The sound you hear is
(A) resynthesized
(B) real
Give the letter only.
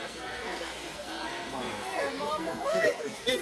A